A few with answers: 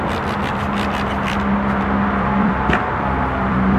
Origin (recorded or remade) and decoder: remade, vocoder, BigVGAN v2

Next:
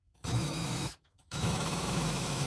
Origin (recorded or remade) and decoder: remade, autoencoder, DAC-VAE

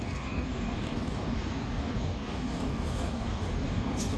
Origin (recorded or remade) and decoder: remade, codec, DAC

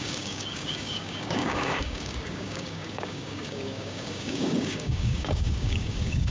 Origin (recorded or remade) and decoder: remade, codec, DAC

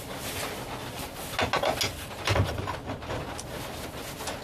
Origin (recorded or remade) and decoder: recorded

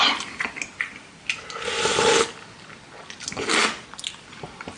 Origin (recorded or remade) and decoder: recorded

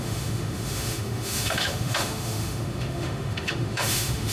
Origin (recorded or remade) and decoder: remade, autoencoder, DAC-VAE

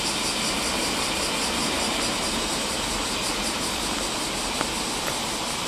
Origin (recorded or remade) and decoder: recorded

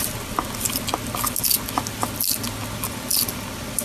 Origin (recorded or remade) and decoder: recorded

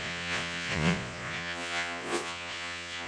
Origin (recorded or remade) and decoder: remade, vocoder, Vocos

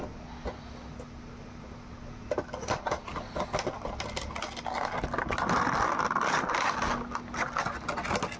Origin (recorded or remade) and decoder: recorded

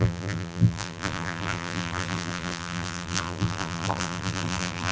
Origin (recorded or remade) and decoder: remade, vocoder, BigVGAN v2